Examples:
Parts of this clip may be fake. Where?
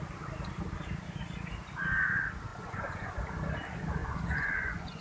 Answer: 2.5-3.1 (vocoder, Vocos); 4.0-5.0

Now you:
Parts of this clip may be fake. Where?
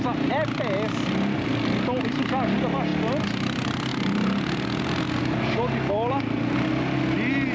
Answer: none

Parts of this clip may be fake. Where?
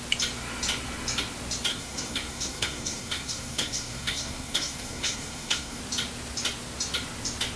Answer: 1.7-5.8 (codec, SNAC)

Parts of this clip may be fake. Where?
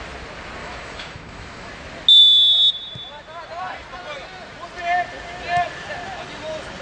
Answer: 0.6-1.7 (autoencoder, DAC-VAE)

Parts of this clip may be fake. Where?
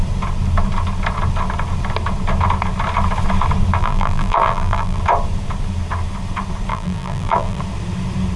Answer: 3.8-5.0 (vocoder, BigVGAN v2); 6.7-7.6